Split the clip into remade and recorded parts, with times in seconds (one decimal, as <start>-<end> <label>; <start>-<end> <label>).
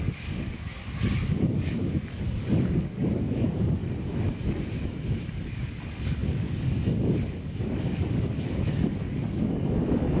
0.0-0.7 remade; 0.7-1.3 recorded; 1.3-3.8 remade; 3.8-4.9 recorded; 4.9-10.2 remade